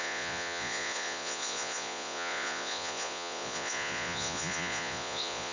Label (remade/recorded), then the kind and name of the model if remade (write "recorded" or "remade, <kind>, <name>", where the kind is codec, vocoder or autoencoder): remade, vocoder, Vocos